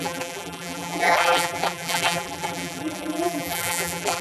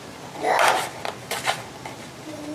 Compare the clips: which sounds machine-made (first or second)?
first